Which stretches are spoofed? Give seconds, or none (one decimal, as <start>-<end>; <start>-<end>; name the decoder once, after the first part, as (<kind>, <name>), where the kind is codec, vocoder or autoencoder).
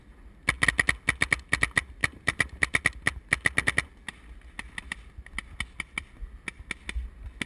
2.0-2.8 (vocoder, BigVGAN v2)